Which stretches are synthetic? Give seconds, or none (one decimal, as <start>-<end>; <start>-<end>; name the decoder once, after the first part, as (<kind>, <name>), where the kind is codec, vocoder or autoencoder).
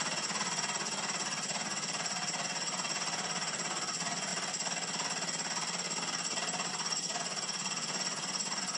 0.0-4.3 (vocoder, Vocos); 6.7-8.8